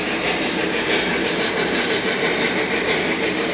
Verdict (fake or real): fake